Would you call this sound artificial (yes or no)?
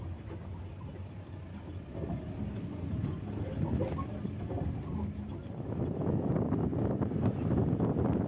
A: no